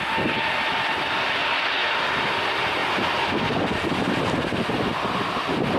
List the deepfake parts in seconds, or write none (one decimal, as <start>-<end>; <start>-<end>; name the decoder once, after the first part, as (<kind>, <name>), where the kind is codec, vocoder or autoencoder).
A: 1.4-2.2 (vocoder, BigVGAN v2)